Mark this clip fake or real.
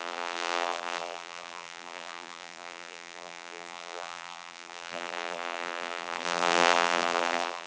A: fake